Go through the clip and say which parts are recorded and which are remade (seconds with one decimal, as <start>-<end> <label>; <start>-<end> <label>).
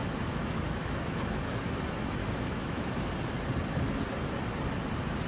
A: 0.0-1.5 remade; 1.5-2.2 recorded; 2.2-2.9 remade; 2.9-5.3 recorded